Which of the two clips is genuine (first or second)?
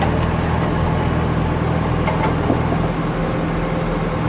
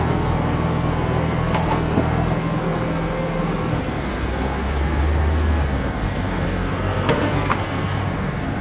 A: first